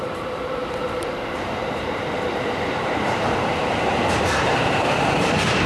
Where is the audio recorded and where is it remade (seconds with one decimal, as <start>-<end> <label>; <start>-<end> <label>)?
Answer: 0.0-5.7 remade